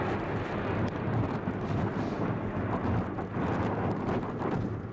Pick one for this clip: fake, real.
real